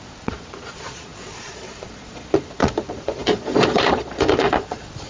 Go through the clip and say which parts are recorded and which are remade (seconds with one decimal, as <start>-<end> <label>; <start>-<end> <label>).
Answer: 0.0-5.1 remade